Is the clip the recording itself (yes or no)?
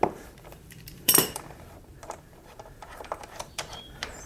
no